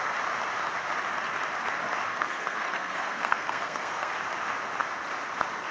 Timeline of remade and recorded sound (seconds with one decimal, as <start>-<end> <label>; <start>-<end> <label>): 0.0-2.1 recorded; 2.1-4.1 remade; 4.1-5.7 recorded